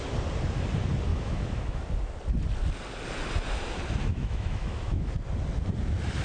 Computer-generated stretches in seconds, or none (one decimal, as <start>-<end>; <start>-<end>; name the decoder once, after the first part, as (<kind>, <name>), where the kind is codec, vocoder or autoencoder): 1.1-1.8 (autoencoder, DAC-VAE); 4.1-5.1

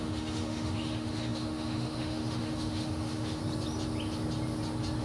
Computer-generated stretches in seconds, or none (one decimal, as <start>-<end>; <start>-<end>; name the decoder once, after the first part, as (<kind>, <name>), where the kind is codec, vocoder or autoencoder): 0.0-3.4 (autoencoder, DAC-VAE)

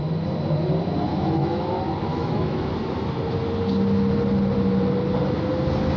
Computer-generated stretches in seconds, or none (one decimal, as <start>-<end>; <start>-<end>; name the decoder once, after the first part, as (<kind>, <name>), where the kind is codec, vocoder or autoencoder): 1.1-1.7 (autoencoder, DAC-VAE); 2.1-2.7

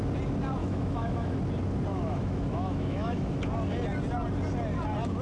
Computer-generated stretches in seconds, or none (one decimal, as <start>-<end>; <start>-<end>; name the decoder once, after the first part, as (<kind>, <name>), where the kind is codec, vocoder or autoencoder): 0.6-1.4 (autoencoder, DAC-VAE); 1.9-3.4

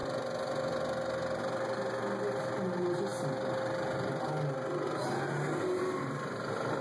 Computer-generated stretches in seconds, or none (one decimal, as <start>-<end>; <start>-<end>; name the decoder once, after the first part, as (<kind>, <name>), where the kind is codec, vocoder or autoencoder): none

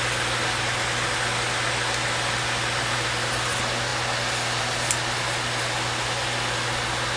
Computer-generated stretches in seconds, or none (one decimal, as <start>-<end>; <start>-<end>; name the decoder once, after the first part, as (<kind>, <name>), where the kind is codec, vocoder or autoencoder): none